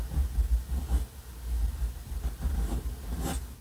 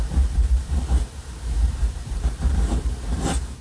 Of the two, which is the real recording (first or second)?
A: first